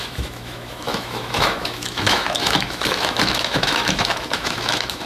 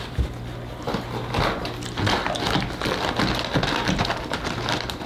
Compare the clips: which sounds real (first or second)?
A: second